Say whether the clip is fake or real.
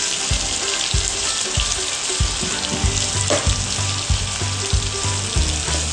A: real